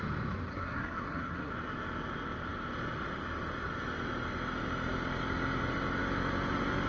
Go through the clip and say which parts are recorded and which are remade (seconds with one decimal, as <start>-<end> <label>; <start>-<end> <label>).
0.0-0.5 recorded; 0.5-1.5 remade; 1.5-6.9 recorded